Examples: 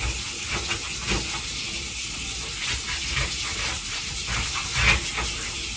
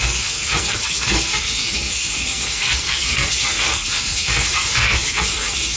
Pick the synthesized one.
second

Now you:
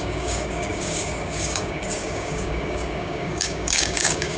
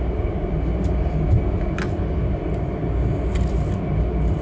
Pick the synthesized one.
first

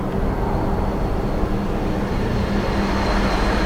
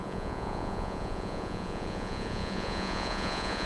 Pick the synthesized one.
second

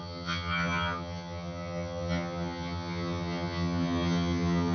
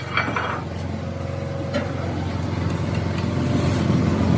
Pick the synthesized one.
first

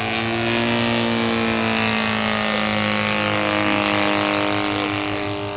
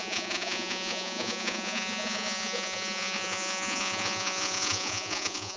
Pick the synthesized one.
second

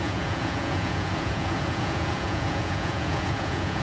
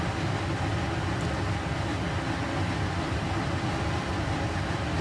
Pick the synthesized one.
first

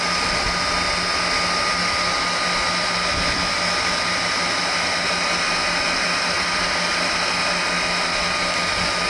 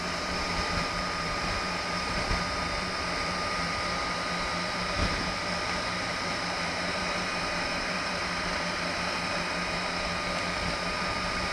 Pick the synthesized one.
second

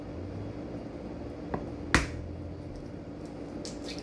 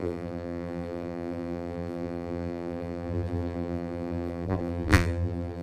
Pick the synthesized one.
second